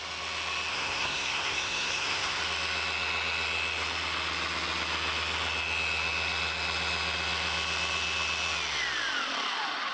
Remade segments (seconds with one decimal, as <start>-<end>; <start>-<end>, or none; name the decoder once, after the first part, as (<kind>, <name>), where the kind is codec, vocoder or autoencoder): 0.7-2.4 (codec, SNAC)

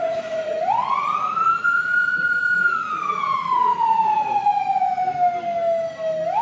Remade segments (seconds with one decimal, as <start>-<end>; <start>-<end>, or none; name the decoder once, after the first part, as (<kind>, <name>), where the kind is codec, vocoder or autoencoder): 0.0-5.0 (vocoder, Vocos)

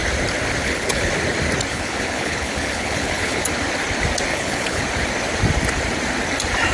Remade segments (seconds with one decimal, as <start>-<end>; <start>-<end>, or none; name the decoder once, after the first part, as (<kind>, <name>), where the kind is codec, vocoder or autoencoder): 0.6-1.1 (codec, HILCodec); 1.7-3.4; 4.3-4.8

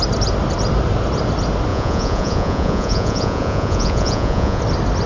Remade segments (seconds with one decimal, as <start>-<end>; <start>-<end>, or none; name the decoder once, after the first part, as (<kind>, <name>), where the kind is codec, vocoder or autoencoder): 1.7-4.6 (vocoder, Vocos)

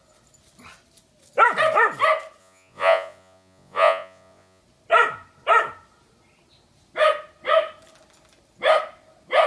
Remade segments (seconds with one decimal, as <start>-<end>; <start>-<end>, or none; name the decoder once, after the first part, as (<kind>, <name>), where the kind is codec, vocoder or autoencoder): 2.4-4.6 (vocoder, Vocos)